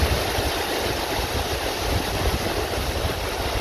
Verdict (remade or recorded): recorded